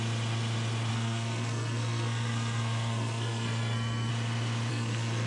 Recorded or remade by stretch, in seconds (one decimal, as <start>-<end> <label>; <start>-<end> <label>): 0.0-0.9 recorded; 0.9-4.1 remade; 4.1-4.7 recorded; 4.7-5.3 remade